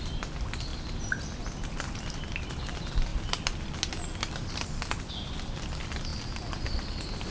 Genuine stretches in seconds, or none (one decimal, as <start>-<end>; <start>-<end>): 0.0-7.3